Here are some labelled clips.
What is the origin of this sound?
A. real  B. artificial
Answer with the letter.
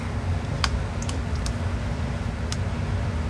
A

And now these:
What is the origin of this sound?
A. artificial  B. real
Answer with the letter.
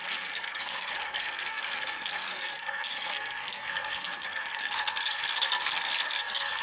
A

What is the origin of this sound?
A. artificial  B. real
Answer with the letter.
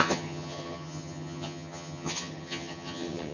A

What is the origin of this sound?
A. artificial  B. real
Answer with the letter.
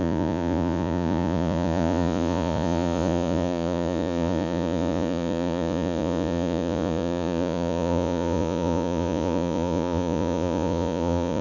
A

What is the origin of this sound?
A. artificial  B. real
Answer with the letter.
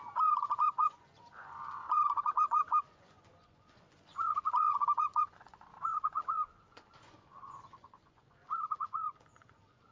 A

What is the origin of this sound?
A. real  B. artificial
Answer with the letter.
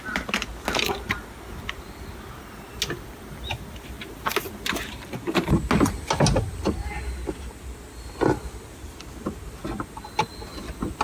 A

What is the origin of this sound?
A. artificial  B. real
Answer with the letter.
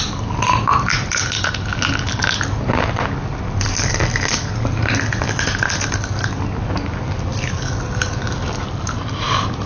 B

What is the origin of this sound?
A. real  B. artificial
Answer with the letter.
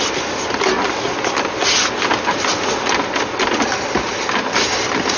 A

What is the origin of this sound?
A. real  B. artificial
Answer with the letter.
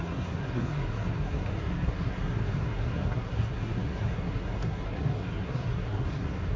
B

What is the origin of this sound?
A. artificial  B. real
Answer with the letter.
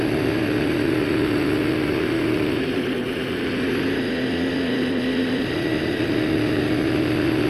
A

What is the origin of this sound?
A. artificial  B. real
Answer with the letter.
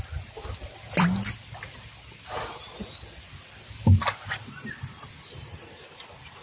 B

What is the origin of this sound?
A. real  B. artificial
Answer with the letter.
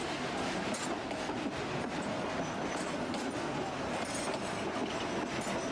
A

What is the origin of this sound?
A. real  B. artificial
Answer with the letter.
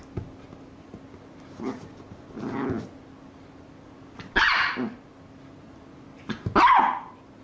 A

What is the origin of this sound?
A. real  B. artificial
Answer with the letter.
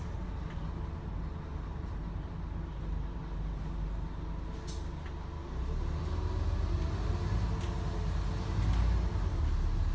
A